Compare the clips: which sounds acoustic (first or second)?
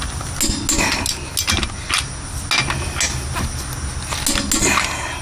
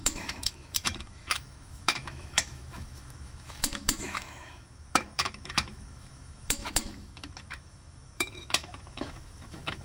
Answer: first